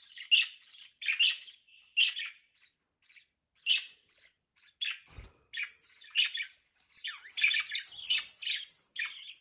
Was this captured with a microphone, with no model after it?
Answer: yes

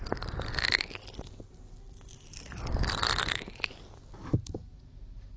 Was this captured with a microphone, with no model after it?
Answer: yes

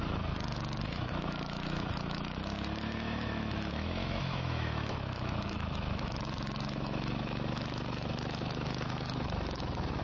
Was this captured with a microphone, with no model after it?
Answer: no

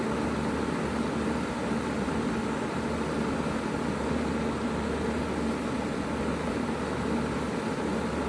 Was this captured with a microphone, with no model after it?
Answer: yes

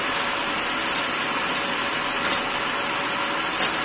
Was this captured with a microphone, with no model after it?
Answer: yes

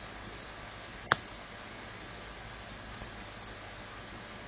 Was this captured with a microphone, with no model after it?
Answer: yes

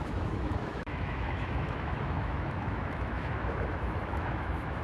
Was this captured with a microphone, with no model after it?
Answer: no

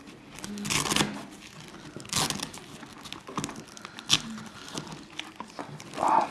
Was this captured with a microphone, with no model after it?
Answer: yes